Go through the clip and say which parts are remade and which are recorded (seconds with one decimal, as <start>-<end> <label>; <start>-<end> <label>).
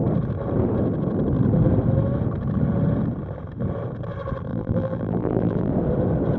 0.0-4.5 recorded; 4.5-5.7 remade; 5.7-6.4 recorded